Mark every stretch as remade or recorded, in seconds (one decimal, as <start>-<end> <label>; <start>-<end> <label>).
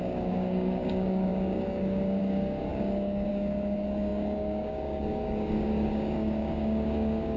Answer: 0.0-7.4 remade